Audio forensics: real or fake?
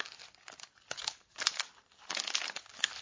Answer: real